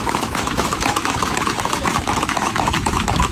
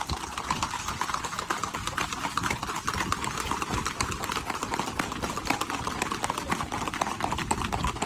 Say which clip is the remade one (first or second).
first